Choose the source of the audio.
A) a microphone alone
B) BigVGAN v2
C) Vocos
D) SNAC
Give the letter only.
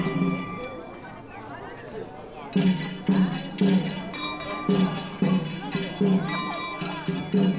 A